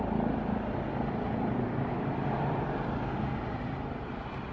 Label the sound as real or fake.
real